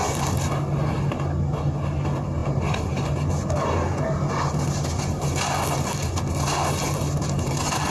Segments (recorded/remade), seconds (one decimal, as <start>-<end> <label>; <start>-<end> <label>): 0.0-2.4 recorded; 2.4-3.0 remade; 3.0-7.9 recorded